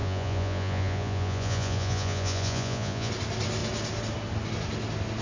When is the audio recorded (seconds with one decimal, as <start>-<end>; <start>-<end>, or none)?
3.1-5.2